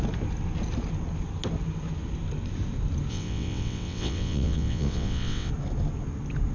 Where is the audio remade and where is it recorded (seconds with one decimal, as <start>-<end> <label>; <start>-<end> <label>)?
0.0-3.1 recorded; 3.1-5.5 remade; 5.5-6.5 recorded